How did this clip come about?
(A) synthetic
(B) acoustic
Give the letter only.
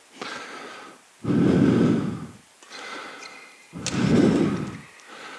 B